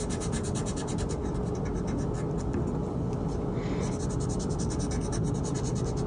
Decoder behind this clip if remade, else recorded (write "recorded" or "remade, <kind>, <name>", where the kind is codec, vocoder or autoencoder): recorded